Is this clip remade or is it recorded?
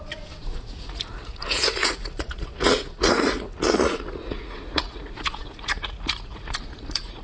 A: remade